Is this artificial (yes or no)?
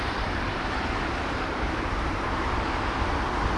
yes